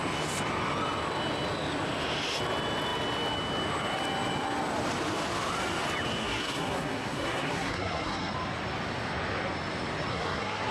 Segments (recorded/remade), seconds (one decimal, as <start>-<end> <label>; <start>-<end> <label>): 0.0-6.2 recorded; 6.2-8.3 remade; 8.3-10.1 recorded; 10.1-10.7 remade